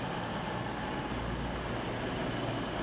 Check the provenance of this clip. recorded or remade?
recorded